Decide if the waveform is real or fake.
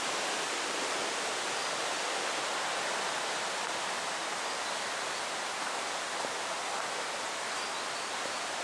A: real